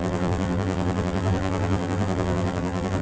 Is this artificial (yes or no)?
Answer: yes